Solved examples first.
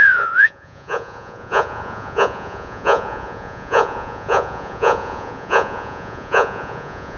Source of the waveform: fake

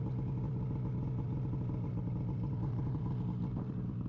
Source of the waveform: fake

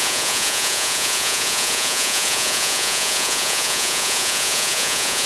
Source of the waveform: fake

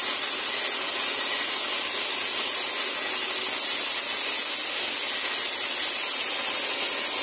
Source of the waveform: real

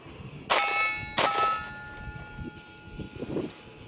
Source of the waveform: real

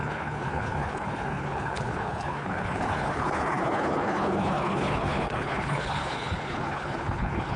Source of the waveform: fake